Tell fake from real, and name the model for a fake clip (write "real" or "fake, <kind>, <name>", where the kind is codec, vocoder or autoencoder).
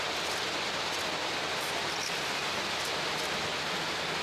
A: real